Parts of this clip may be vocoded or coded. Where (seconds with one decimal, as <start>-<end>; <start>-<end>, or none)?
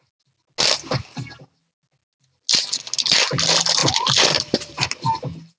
3.8-5.1